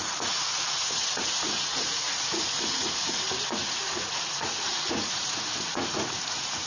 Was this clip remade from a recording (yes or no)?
yes